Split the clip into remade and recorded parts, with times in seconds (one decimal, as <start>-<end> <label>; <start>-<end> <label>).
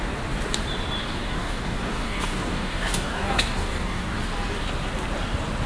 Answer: 0.0-1.0 recorded; 1.0-4.2 remade; 4.2-5.7 recorded